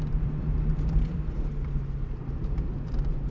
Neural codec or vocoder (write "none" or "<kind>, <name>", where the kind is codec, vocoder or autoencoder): vocoder, BigVGAN v2